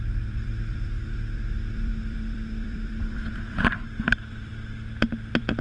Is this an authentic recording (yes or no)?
no